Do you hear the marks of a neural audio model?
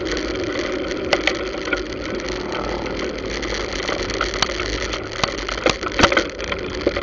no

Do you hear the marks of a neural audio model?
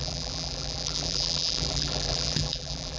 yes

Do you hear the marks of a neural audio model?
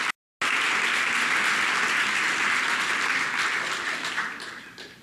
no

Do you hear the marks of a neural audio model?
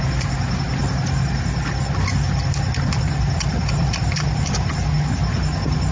no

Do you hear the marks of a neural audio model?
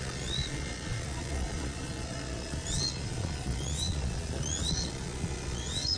yes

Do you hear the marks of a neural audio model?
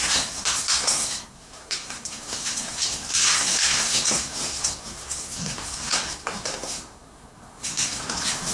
yes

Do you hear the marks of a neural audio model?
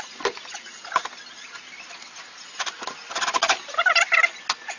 no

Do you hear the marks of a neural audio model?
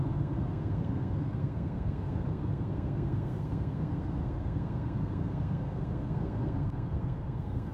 yes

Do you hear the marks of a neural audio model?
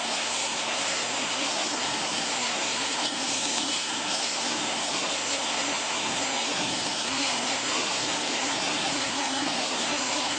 yes